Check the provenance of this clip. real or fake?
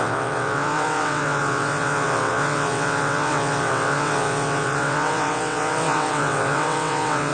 fake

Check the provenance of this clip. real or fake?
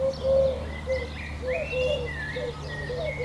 real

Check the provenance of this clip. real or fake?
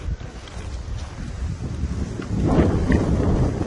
fake